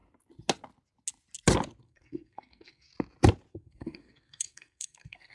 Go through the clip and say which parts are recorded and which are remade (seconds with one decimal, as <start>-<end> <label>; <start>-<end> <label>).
0.0-1.8 recorded; 1.8-2.9 remade; 2.9-3.5 recorded; 3.5-5.3 remade